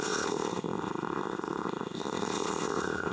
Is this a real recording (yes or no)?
no